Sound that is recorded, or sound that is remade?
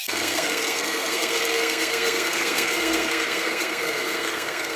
remade